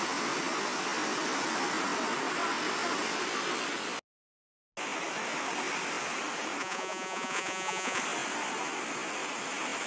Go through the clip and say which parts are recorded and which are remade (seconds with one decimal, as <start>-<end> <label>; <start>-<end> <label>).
0.0-6.6 recorded; 6.6-8.0 remade; 8.0-9.9 recorded